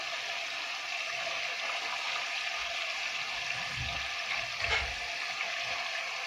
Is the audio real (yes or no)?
yes